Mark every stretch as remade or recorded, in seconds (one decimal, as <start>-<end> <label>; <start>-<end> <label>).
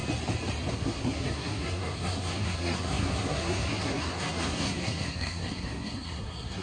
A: 0.0-0.7 recorded; 0.7-6.6 remade